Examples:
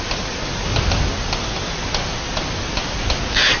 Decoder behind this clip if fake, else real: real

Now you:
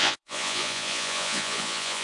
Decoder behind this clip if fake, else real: fake, vocoder, Vocos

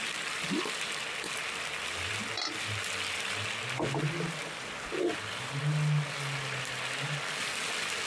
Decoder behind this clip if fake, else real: real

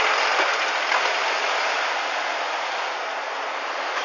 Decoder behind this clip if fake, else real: real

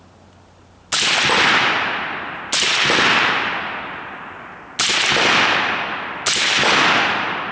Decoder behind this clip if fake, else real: real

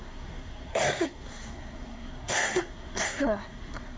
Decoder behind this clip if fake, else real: fake, codec, SNAC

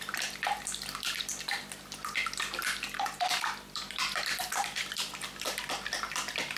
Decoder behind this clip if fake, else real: fake, vocoder, BigVGAN v2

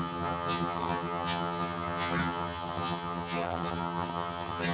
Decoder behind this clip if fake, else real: fake, vocoder, HiFi-GAN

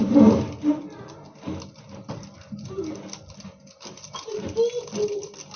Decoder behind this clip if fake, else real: real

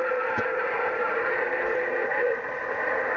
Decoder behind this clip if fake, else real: fake, vocoder, BigVGAN v2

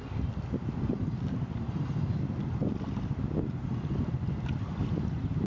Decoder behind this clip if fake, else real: real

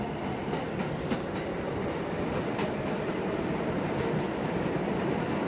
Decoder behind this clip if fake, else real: real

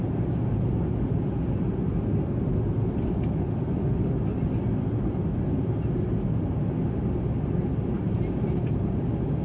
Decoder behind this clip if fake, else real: real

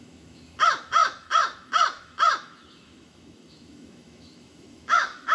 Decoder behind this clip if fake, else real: fake, autoencoder, DAC-VAE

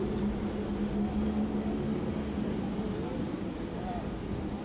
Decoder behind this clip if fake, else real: real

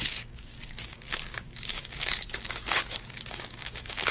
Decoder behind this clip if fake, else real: fake, codec, DAC